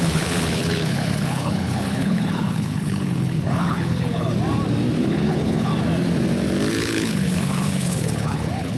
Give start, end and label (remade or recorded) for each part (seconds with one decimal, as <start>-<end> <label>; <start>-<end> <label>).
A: 0.0-4.3 remade; 4.3-5.0 recorded; 5.0-5.7 remade; 5.7-6.7 recorded; 6.7-8.8 remade